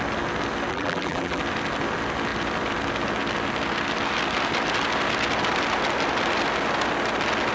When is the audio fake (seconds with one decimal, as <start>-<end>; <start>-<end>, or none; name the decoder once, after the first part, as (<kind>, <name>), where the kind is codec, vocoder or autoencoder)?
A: 0.7-1.4 (vocoder, BigVGAN v2)